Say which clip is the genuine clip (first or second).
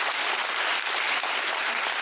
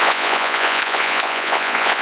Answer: first